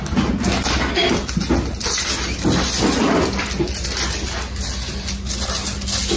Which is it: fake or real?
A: real